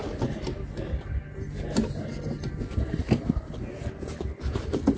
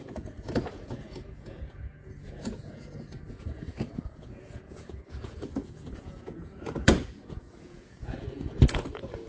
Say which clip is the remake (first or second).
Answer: second